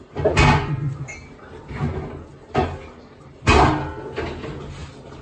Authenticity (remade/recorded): recorded